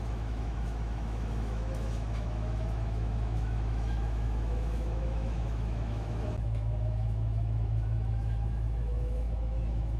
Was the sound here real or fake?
fake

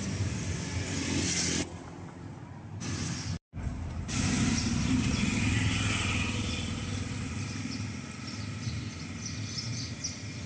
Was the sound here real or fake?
real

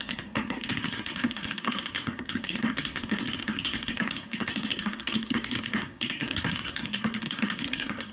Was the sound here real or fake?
fake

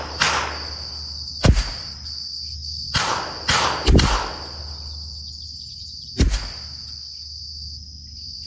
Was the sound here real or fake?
real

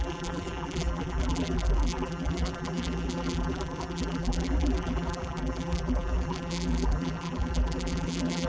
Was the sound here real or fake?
fake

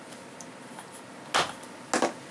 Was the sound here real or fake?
real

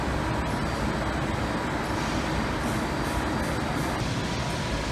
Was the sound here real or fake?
real